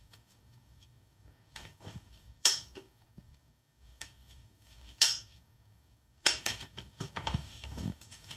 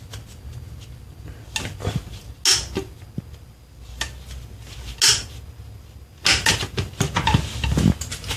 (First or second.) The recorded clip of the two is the second